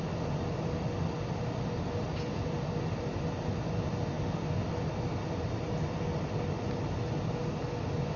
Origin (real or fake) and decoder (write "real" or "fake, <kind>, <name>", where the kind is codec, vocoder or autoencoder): real